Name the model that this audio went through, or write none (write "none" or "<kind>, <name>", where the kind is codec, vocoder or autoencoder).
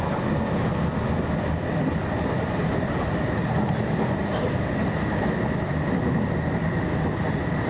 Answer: none